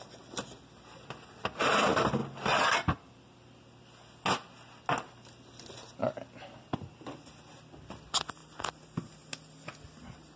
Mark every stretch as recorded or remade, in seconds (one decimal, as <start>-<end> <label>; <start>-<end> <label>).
0.0-2.2 recorded; 2.2-2.7 remade; 2.7-10.4 recorded